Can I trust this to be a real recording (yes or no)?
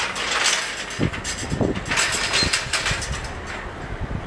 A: yes